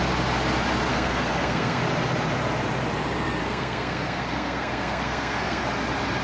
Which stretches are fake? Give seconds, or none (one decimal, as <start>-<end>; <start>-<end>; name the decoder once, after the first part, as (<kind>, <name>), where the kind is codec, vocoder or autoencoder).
0.9-1.8 (codec, SNAC); 3.4-5.6

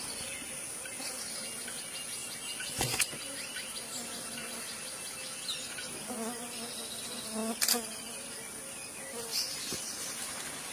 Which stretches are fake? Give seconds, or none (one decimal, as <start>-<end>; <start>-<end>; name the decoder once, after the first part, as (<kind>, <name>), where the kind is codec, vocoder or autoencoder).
none

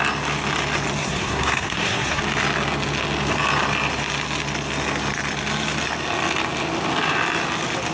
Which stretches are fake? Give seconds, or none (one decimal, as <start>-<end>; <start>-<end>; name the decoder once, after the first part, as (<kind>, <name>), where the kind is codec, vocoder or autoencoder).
1.0-2.2 (codec, SNAC)

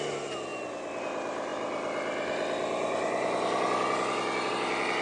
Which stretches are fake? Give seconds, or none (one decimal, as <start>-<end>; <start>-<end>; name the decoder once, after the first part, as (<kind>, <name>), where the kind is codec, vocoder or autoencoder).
none

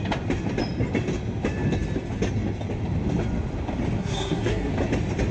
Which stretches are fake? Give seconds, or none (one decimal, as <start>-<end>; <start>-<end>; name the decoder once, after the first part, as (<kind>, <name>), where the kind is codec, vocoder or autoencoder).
4.0-4.7 (codec, SNAC)